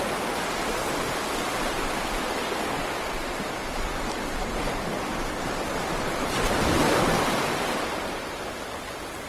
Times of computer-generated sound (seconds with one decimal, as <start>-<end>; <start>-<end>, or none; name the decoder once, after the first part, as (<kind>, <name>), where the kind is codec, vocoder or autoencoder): 7.5-8.3 (vocoder, BigVGAN v2)